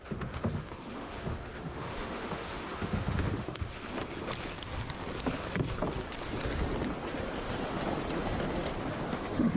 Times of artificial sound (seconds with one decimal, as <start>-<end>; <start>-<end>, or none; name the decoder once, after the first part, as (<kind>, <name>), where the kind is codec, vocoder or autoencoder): 0.0-3.8 (autoencoder, DAC-VAE); 9.0-9.6